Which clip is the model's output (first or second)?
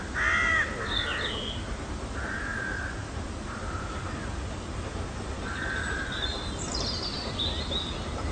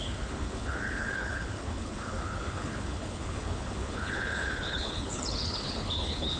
second